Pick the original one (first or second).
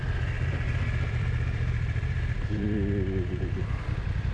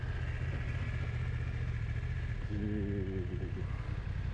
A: second